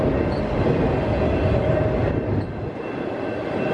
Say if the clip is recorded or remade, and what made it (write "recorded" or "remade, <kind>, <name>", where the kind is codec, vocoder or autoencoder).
recorded